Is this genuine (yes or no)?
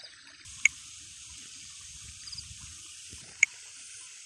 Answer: no